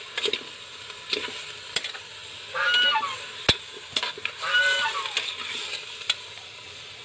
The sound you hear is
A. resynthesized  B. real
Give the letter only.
B